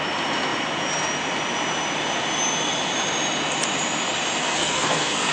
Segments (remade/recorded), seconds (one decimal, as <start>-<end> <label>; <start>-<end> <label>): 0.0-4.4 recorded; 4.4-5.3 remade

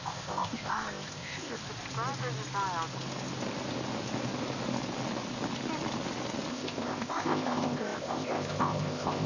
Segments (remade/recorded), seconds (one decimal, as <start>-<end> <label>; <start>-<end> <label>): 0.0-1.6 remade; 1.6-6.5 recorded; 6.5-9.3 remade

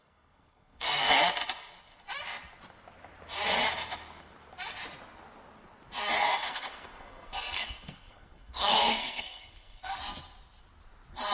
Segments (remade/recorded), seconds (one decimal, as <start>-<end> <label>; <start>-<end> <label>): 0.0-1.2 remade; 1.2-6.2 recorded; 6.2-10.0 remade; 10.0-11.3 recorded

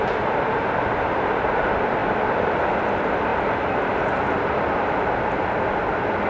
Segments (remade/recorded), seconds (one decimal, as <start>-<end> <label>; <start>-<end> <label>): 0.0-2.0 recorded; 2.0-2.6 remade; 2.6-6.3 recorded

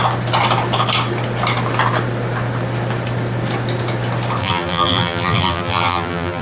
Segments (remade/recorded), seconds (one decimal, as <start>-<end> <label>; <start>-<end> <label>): 0.0-4.4 recorded; 4.4-6.4 remade